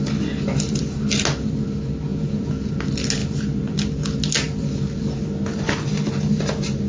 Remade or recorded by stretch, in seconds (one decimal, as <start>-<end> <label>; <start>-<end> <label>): 0.0-2.1 recorded; 2.1-2.7 remade; 2.7-6.9 recorded